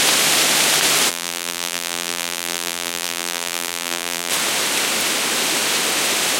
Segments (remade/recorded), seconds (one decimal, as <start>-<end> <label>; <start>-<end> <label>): 0.0-1.1 recorded; 1.1-4.3 remade; 4.3-6.4 recorded